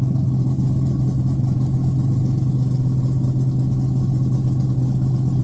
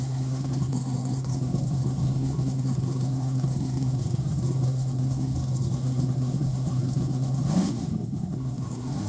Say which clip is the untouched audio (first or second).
first